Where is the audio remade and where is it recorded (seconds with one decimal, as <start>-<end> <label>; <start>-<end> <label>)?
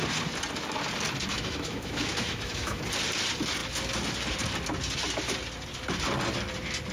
0.0-1.3 recorded; 1.3-2.8 remade; 2.8-6.9 recorded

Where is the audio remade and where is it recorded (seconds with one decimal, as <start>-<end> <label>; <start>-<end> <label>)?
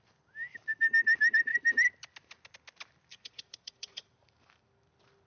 0.0-3.1 recorded; 3.1-4.1 remade; 4.1-5.3 recorded